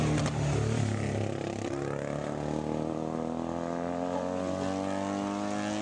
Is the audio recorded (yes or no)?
yes